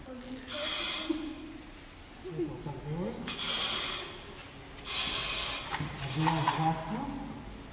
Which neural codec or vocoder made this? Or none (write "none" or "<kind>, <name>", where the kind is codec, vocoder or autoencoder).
none